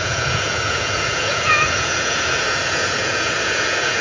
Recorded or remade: remade